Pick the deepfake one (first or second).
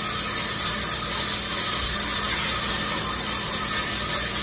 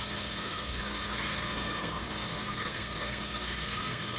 second